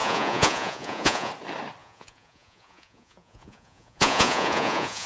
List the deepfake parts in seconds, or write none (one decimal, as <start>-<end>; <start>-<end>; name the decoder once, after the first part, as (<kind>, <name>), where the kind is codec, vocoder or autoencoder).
0.0-1.3 (vocoder, Vocos); 1.8-5.1